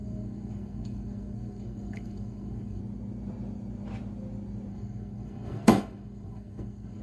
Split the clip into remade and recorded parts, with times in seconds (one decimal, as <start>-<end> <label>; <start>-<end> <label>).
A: 0.0-2.8 remade; 2.8-4.7 recorded; 4.7-7.0 remade